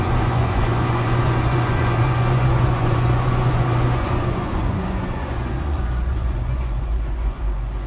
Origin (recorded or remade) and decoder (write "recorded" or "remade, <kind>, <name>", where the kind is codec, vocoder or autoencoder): remade, vocoder, Vocos